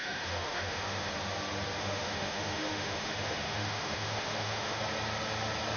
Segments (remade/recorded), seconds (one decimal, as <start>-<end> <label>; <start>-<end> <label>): 0.0-1.1 remade; 1.1-1.8 recorded; 1.8-4.8 remade; 4.8-5.8 recorded